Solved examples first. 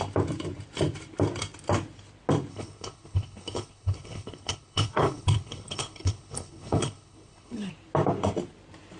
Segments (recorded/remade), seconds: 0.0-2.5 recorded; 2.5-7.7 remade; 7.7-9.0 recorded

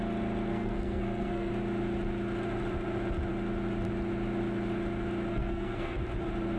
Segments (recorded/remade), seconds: 0.0-0.5 recorded; 0.5-1.5 remade; 1.5-5.3 recorded; 5.3-6.0 remade; 6.0-6.6 recorded

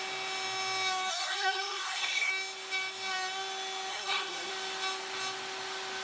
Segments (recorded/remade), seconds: 0.0-1.1 recorded; 1.1-2.3 remade; 2.3-3.9 recorded; 3.9-4.5 remade; 4.5-6.0 recorded

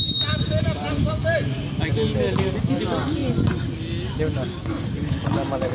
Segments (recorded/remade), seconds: 0.0-5.7 recorded

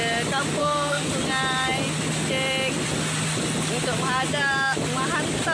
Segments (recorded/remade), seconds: 0.0-0.6 recorded; 0.6-1.1 remade; 1.1-5.5 recorded